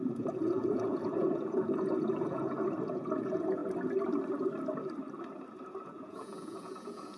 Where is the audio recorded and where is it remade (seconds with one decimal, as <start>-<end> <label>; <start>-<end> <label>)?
0.0-3.6 remade; 3.6-5.8 recorded; 5.8-7.2 remade

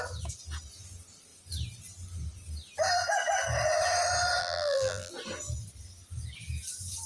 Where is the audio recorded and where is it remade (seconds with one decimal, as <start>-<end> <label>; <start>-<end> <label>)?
0.0-4.4 recorded; 4.4-5.1 remade; 5.1-7.1 recorded

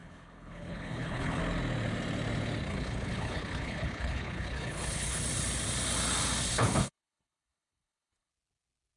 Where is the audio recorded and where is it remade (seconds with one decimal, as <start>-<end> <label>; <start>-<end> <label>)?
0.0-1.4 remade; 1.4-2.7 recorded; 2.7-5.2 remade; 5.2-6.5 recorded; 6.5-8.3 remade; 8.3-9.0 recorded

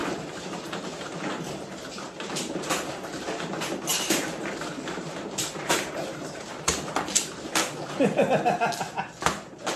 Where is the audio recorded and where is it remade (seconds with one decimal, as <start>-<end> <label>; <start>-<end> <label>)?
0.0-2.6 remade; 2.6-3.9 recorded; 3.9-6.5 remade; 6.5-9.8 recorded

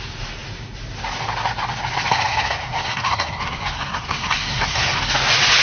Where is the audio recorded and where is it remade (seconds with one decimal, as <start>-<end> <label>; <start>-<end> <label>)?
0.0-2.1 recorded; 2.1-5.1 remade; 5.1-5.6 recorded

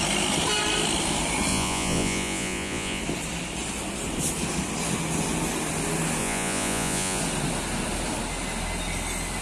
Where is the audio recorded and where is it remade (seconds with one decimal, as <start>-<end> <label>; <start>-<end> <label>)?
0.0-1.5 recorded; 1.5-3.0 remade; 3.0-6.2 recorded; 6.2-7.2 remade; 7.2-9.4 recorded

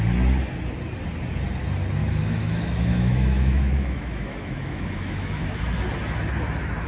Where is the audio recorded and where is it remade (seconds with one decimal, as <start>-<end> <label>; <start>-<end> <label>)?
0.0-2.0 recorded; 2.0-5.6 remade; 5.6-6.9 recorded

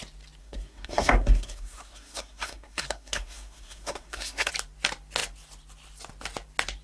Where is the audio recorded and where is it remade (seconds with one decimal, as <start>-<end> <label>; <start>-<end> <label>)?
0.0-0.4 recorded; 0.4-4.5 remade; 4.5-6.8 recorded